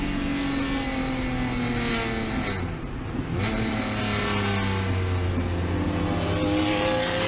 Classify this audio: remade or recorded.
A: recorded